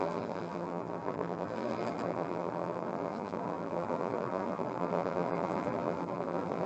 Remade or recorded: remade